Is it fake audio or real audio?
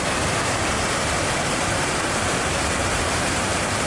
fake